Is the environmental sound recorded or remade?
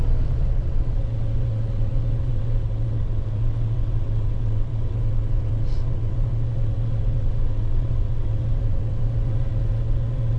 remade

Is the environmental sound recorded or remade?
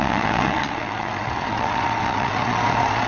remade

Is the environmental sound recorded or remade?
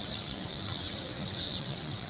remade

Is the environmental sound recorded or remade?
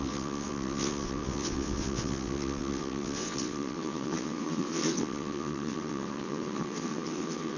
remade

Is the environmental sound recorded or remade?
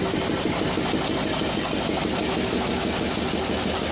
recorded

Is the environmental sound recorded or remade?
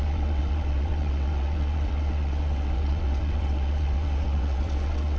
remade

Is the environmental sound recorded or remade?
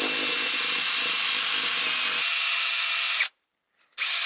recorded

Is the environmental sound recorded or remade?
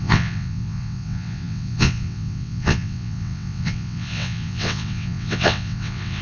remade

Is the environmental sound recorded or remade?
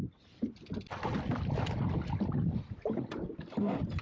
recorded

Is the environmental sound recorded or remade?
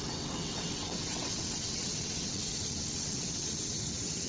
remade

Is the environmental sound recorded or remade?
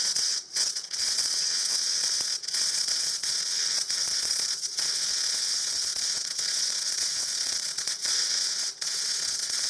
remade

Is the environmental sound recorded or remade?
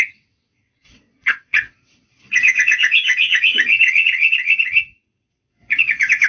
remade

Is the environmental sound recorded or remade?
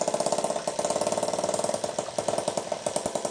recorded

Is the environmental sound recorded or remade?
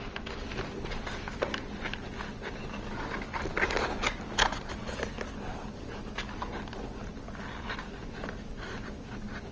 recorded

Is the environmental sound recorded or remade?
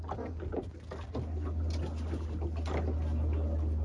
recorded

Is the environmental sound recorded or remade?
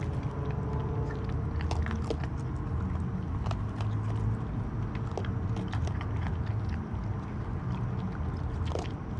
recorded